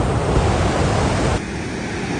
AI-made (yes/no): no